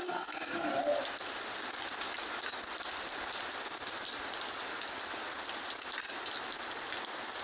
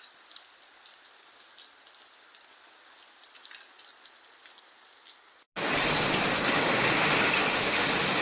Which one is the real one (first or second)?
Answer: second